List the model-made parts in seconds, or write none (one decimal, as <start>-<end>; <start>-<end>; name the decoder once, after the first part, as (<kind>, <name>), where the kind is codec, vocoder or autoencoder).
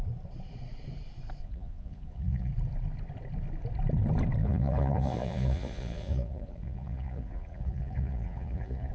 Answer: 1.4-2.5 (vocoder, Vocos); 4.4-8.9